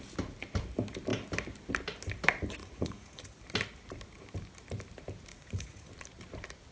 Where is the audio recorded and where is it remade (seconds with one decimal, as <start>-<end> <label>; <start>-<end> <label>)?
0.0-2.6 recorded; 2.6-3.4 remade; 3.4-5.3 recorded; 5.3-5.9 remade; 5.9-6.7 recorded